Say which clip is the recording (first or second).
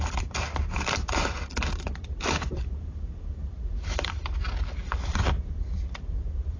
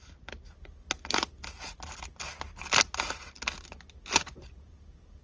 second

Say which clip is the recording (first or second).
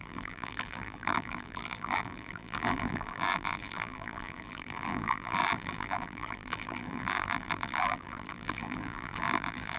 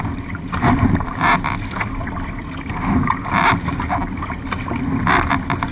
second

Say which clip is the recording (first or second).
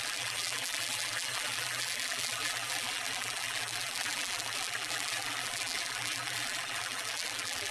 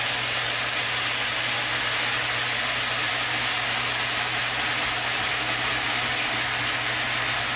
second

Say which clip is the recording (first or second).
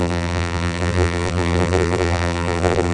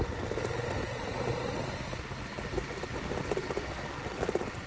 second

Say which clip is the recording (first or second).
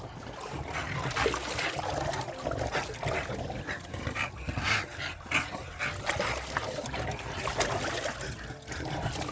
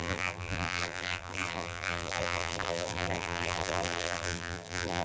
first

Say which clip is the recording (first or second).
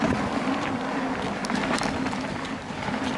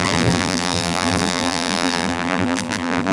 first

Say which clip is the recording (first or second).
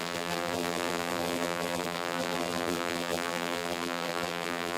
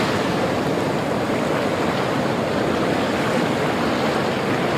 second